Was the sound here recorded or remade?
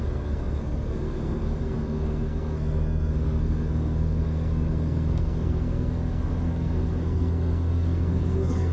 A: remade